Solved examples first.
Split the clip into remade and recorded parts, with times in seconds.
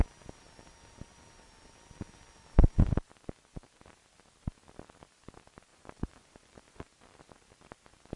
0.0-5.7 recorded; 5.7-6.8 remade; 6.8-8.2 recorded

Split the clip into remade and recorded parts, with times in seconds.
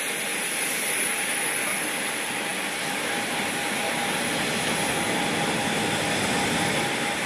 0.0-7.3 recorded